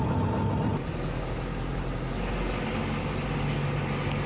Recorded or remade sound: recorded